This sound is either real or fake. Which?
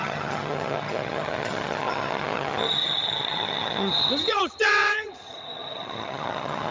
fake